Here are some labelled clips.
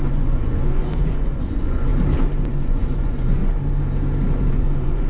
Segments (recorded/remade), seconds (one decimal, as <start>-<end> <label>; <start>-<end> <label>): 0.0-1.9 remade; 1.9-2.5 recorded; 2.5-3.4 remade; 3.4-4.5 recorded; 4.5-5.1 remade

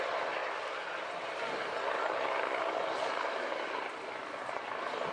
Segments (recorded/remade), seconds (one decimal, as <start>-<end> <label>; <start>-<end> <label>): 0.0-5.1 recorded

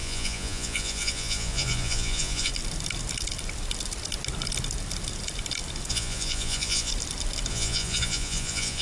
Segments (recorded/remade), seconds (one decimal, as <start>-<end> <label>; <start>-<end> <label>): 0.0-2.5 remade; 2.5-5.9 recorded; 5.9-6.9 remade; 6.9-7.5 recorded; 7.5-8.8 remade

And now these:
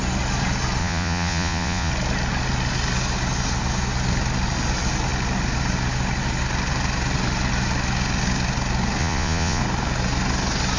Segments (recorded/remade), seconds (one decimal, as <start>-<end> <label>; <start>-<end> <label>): 0.0-0.8 recorded; 0.8-1.9 remade; 1.9-9.0 recorded; 9.0-9.6 remade; 9.6-10.8 recorded

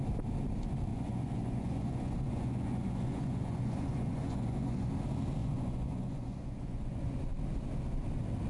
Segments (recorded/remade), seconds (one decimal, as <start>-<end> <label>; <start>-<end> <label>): 0.0-0.9 recorded; 0.9-4.9 remade; 4.9-5.4 recorded; 5.4-7.2 remade; 7.2-8.5 recorded

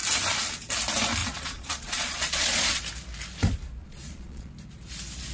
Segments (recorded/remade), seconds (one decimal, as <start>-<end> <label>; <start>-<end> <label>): 0.0-1.2 recorded; 1.2-2.8 remade; 2.8-3.8 recorded; 3.8-4.5 remade; 4.5-5.3 recorded